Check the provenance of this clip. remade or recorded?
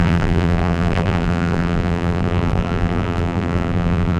remade